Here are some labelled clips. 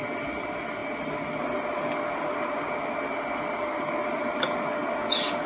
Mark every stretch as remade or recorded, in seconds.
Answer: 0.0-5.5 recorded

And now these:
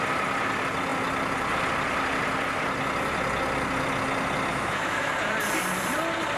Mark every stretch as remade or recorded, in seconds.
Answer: 0.0-4.5 recorded; 4.5-5.1 remade; 5.1-6.4 recorded

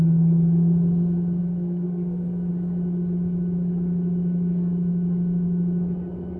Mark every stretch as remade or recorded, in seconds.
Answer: 0.0-1.4 recorded; 1.4-2.5 remade; 2.5-6.4 recorded

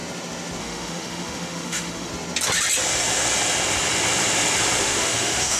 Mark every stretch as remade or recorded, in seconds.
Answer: 0.0-0.6 recorded; 0.6-2.1 remade; 2.1-4.8 recorded; 4.8-5.6 remade

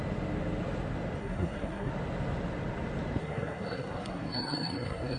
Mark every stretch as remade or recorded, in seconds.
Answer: 0.0-1.2 recorded; 1.2-1.9 remade; 1.9-3.2 recorded; 3.2-5.2 remade